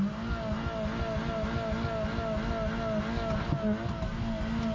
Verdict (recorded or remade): recorded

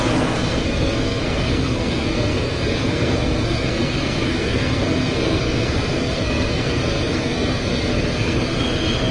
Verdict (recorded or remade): remade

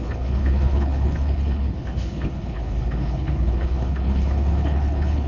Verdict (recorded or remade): remade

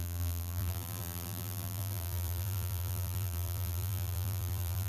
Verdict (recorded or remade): remade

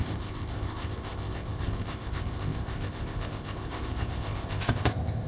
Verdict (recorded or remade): remade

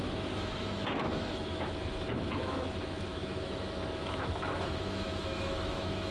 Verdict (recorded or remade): remade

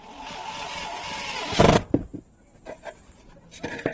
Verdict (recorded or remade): recorded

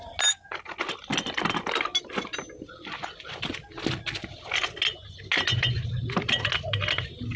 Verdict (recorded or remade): recorded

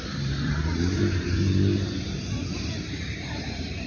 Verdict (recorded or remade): remade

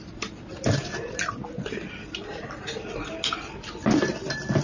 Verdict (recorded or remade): recorded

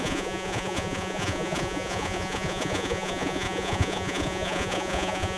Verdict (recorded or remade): remade